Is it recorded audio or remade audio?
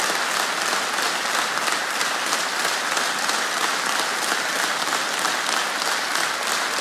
recorded